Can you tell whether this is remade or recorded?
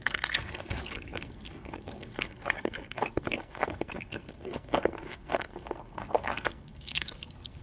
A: remade